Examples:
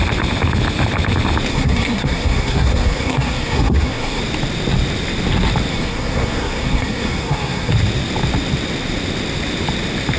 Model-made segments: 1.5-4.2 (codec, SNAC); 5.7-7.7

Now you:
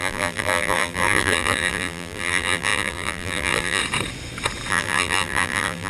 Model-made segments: 0.0-3.8 (vocoder, BigVGAN v2); 4.7-5.9